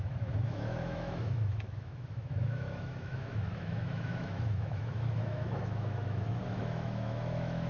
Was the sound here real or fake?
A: fake